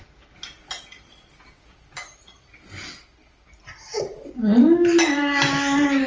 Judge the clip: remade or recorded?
recorded